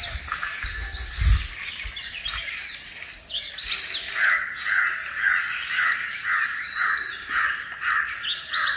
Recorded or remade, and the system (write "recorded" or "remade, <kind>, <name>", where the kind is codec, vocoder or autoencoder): recorded